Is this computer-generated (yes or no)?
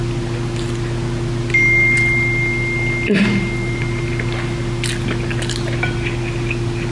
no